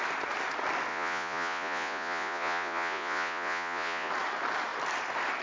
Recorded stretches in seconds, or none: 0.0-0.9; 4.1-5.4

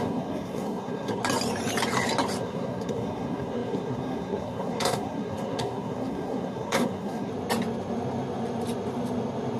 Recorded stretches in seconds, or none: 1.2-2.4; 7.3-9.6